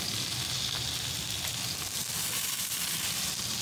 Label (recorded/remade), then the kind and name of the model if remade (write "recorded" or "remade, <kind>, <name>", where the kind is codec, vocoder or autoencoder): recorded